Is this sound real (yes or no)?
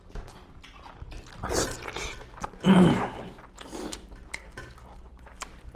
yes